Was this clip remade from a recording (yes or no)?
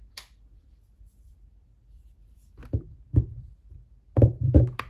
yes